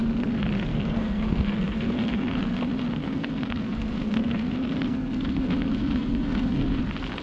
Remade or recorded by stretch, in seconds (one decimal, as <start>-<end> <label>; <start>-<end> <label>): 0.0-0.7 recorded; 0.7-2.6 remade; 2.6-3.0 recorded; 3.0-6.8 remade; 6.8-7.2 recorded